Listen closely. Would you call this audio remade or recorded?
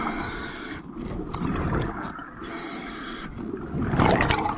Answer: recorded